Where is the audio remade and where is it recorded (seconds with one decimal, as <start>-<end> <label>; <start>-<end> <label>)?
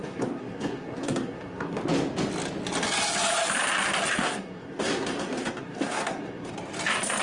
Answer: 0.0-1.8 remade; 1.8-4.2 recorded; 4.2-6.5 remade; 6.5-7.2 recorded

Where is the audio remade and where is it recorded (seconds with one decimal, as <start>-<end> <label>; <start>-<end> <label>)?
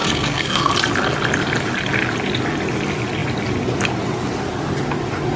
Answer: 0.0-0.7 remade; 0.7-5.4 recorded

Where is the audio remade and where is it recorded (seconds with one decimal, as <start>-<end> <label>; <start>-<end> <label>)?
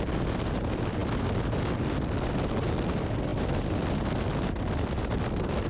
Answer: 0.0-5.7 recorded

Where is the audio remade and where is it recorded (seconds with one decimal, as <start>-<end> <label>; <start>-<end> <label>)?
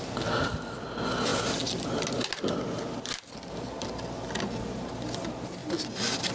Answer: 0.0-6.3 recorded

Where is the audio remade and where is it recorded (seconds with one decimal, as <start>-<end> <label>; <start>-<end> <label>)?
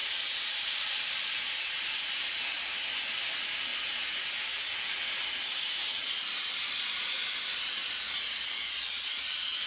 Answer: 0.0-9.7 recorded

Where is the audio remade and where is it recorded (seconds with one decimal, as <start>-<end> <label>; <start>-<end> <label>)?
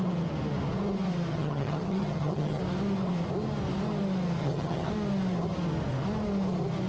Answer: 0.0-1.3 recorded; 1.3-2.6 remade; 2.6-4.4 recorded; 4.4-4.9 remade; 4.9-6.9 recorded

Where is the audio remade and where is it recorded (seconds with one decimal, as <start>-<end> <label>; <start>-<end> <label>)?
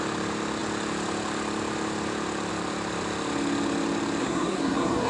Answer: 0.0-4.2 recorded; 4.2-5.1 remade